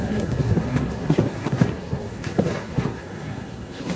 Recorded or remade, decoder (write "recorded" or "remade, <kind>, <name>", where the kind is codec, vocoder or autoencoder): remade, codec, SNAC